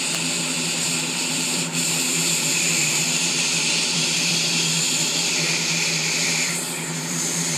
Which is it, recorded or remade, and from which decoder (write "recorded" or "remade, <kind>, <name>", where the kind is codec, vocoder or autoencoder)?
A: remade, vocoder, BigVGAN v2